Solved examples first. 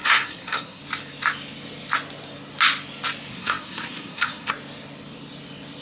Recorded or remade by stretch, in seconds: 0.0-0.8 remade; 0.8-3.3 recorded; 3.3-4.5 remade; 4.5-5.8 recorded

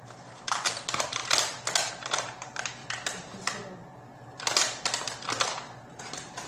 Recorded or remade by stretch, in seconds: 0.0-1.2 remade; 1.2-1.9 recorded; 1.9-2.8 remade; 2.8-6.0 recorded; 6.0-6.5 remade

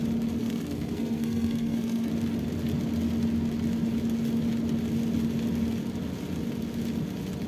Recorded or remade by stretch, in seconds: 0.0-0.4 recorded; 0.4-2.1 remade; 2.1-7.5 recorded

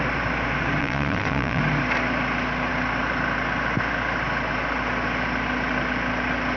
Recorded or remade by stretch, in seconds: 0.0-0.8 recorded; 0.8-1.6 remade; 1.6-6.6 recorded

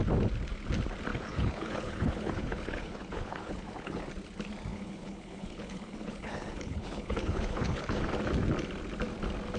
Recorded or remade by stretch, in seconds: 0.0-1.1 recorded; 1.1-4.0 remade; 4.0-4.7 recorded; 4.7-8.1 remade; 8.1-9.6 recorded

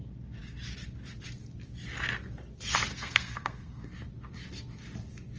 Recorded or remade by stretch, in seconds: 0.0-2.9 recorded; 2.9-3.9 remade; 3.9-5.4 recorded

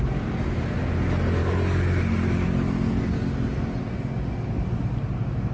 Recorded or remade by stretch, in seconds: 0.0-5.5 recorded